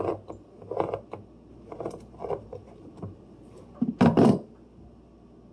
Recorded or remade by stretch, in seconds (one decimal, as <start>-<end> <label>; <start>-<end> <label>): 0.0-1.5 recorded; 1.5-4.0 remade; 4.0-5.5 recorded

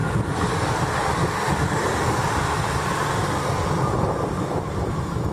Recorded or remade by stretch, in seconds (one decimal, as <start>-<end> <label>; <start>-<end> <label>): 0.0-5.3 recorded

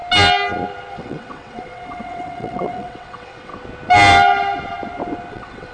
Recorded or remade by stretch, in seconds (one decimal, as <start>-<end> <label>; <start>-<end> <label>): 0.0-0.9 recorded; 0.9-3.5 remade; 3.5-5.3 recorded; 5.3-5.7 remade

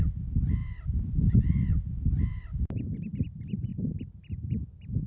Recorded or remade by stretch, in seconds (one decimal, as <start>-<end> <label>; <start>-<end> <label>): 0.0-0.6 recorded; 0.6-3.1 remade; 3.1-5.1 recorded

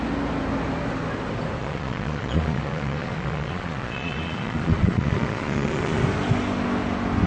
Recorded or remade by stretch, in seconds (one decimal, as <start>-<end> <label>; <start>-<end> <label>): 0.0-1.6 recorded; 1.6-6.0 remade; 6.0-7.3 recorded